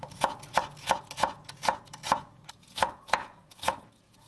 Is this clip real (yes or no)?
no